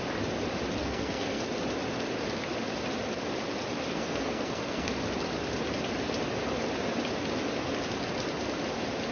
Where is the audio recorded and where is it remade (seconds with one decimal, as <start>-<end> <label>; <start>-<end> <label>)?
0.0-0.8 recorded; 0.8-1.4 remade; 1.4-3.9 recorded; 3.9-4.9 remade; 4.9-9.1 recorded